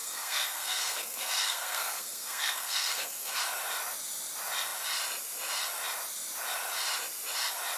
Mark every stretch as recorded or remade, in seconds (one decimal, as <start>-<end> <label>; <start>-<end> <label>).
0.0-3.4 remade; 3.4-7.8 recorded